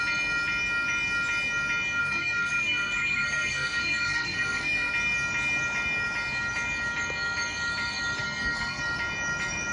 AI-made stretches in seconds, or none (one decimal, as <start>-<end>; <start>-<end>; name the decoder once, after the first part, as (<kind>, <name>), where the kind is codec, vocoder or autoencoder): 2.0-4.9 (codec, SNAC); 8.2-8.8